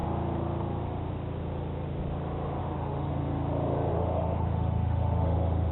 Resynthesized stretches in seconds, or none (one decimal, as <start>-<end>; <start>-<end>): 2.6-3.1; 3.9-5.7